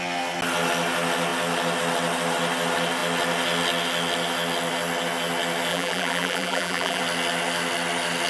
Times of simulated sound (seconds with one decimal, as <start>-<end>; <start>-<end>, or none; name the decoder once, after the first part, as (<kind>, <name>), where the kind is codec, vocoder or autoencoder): 5.7-7.0 (vocoder, BigVGAN v2)